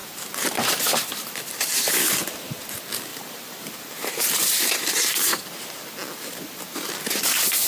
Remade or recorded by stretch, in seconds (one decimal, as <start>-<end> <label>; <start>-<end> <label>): 0.0-0.5 remade; 0.5-3.1 recorded; 3.1-5.3 remade; 5.3-7.7 recorded